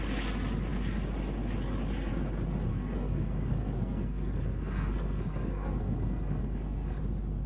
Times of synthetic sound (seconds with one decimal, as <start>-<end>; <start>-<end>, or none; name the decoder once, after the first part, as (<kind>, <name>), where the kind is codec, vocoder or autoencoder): 2.7-7.0 (codec, SNAC)